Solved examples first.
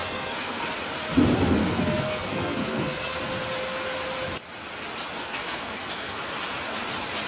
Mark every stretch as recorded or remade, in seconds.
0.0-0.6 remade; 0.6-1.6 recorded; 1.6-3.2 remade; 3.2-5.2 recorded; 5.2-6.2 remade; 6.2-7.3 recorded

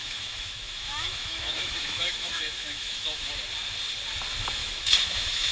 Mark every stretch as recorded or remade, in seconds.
0.0-3.3 remade; 3.3-4.6 recorded; 4.6-5.5 remade

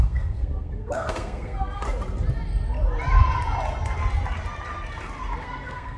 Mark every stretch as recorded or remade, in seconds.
0.0-1.8 remade; 1.8-5.4 recorded; 5.4-6.0 remade

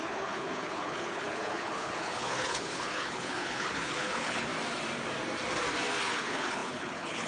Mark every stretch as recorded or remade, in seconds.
0.0-4.5 remade; 4.5-6.0 recorded; 6.0-7.3 remade

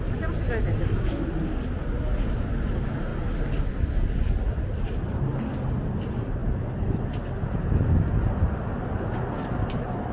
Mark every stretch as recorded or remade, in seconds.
0.0-10.1 recorded

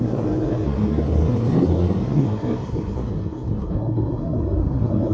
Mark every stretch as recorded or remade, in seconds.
0.0-5.1 remade

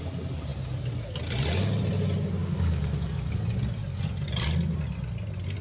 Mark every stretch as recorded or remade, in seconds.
0.0-2.4 recorded; 2.4-3.4 remade; 3.4-5.6 recorded

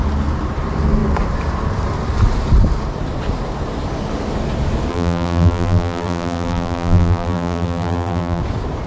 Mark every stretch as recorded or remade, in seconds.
0.0-4.9 recorded; 4.9-8.4 remade; 8.4-8.9 recorded